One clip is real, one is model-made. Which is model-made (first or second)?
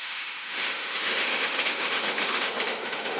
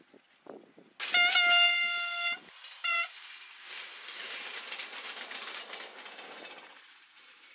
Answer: first